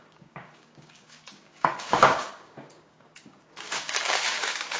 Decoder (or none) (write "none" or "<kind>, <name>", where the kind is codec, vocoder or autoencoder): codec, DAC